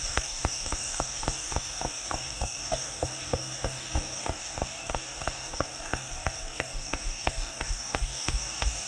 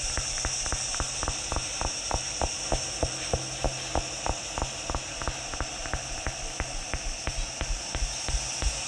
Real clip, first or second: second